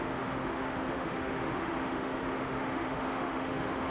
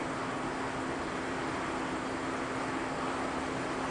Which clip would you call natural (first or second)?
second